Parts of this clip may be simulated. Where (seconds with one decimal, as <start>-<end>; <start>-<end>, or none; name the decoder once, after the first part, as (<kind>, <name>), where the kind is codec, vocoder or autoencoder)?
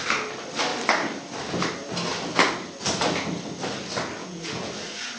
4.2-4.7 (vocoder, Vocos)